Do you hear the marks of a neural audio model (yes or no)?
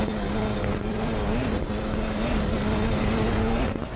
no